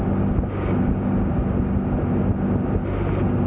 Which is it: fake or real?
real